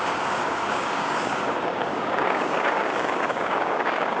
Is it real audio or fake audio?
fake